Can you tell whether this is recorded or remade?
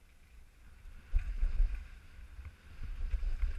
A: recorded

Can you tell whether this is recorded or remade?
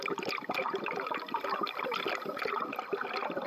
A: recorded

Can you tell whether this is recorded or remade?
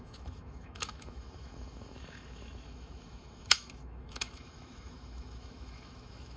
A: remade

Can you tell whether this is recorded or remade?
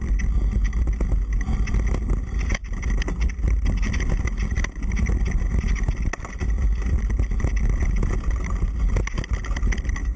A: recorded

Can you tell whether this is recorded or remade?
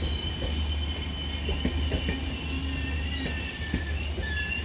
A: recorded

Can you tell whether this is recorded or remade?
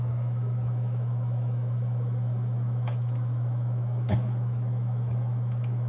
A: remade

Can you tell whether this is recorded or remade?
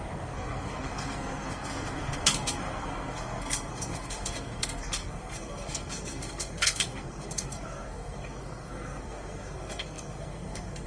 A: remade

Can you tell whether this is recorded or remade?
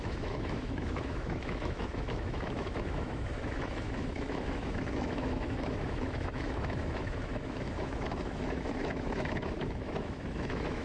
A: remade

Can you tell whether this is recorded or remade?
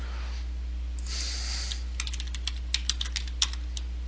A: recorded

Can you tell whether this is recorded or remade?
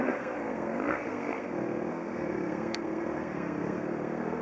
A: remade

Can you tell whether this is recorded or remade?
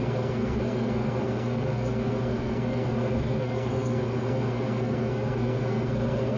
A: remade